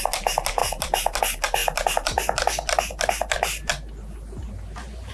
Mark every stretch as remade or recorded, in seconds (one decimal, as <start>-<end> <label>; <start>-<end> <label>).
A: 0.0-5.1 recorded